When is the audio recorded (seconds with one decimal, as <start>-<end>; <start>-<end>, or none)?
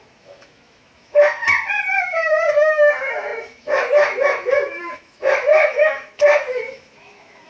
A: 1.4-2.0